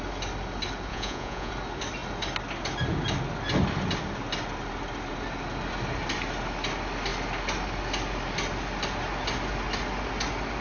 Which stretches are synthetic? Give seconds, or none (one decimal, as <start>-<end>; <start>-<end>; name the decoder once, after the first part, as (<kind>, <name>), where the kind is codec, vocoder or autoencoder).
0.9-1.5 (vocoder, Vocos)